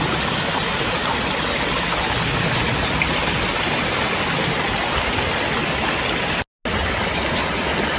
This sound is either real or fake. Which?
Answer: real